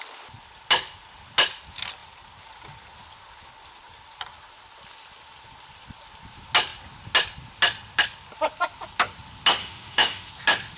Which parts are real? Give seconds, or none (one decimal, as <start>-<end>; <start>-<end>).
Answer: 0.0-9.6; 10.3-10.8